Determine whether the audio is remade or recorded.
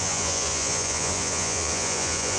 remade